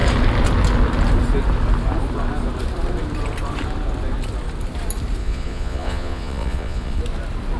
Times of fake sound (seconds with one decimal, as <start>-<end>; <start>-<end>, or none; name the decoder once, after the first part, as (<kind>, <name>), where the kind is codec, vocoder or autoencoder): 5.2-7.0 (vocoder, Vocos)